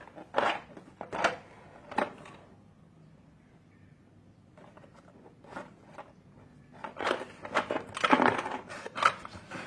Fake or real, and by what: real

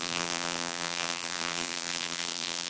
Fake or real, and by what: fake, vocoder, BigVGAN v2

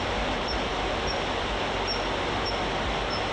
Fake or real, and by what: real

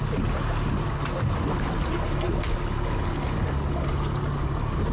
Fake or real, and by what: real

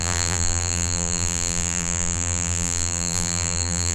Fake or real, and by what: fake, vocoder, BigVGAN v2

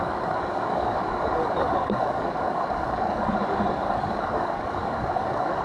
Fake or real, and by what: fake, codec, DAC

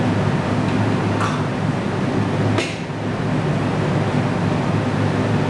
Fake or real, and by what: real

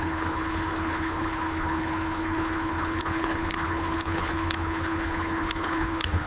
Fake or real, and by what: fake, codec, HILCodec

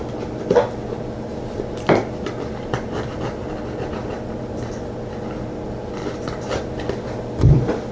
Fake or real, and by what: real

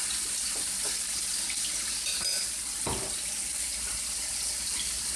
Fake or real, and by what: real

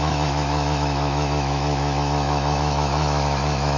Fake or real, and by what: fake, autoencoder, DAC-VAE